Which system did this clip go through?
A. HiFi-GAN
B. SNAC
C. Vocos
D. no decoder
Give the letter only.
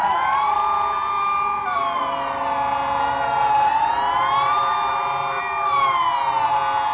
D